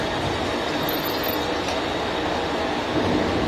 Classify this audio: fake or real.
real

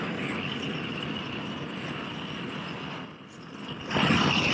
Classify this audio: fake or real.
real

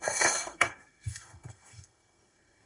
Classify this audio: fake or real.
fake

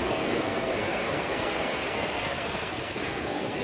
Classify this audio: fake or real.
fake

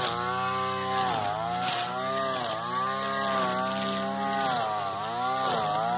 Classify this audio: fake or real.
real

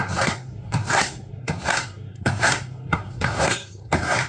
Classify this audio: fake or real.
fake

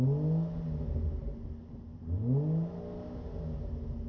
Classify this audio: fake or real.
real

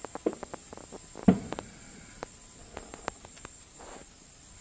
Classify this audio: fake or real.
real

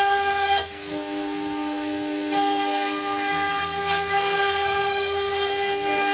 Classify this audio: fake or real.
fake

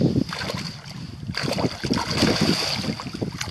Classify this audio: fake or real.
real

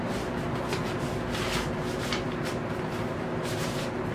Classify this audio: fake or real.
real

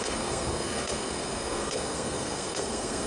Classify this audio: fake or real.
fake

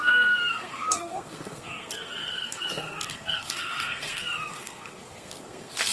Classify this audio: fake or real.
fake